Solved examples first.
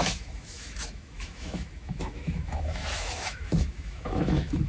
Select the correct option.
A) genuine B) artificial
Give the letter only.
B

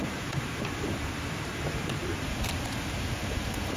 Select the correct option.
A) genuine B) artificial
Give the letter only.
B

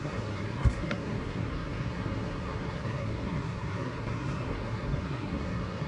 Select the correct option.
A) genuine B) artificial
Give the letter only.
B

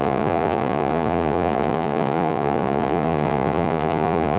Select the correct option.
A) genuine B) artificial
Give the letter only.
B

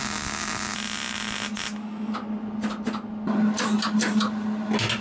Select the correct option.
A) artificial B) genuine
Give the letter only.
B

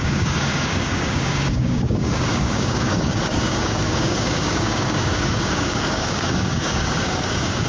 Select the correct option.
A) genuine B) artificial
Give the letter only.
B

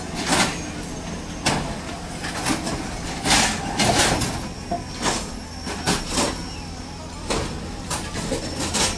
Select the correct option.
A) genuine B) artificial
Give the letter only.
A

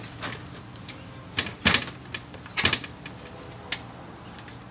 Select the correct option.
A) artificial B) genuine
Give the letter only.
B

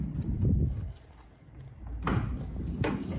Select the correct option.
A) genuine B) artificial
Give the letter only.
B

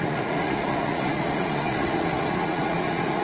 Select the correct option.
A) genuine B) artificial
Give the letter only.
B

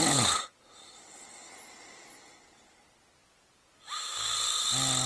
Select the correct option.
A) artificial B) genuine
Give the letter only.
B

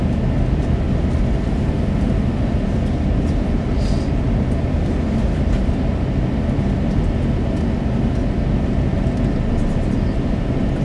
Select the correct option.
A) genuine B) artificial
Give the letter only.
A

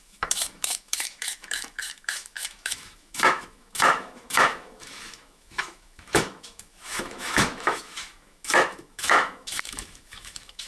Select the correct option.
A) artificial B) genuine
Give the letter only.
A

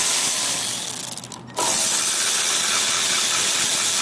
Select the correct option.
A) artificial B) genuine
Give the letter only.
B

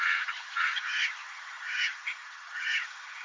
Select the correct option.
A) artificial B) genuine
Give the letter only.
A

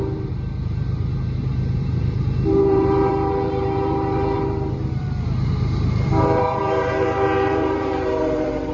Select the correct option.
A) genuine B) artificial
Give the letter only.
B